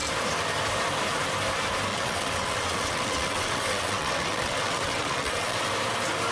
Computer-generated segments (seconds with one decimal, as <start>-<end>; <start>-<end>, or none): 1.9-5.7